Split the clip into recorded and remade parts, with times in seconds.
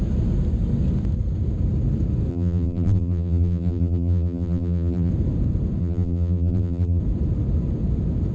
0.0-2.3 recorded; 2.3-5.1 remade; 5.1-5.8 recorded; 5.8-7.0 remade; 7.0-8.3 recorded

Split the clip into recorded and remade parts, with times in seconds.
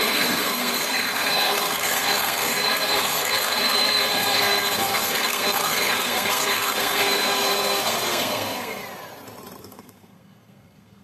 0.0-8.8 remade; 8.8-9.6 recorded; 9.6-11.0 remade